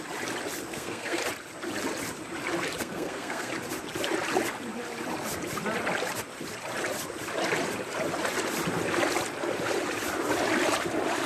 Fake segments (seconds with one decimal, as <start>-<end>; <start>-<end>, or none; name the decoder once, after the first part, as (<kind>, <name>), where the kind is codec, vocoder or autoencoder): 0.7-1.2 (codec, SNAC); 2.8-3.5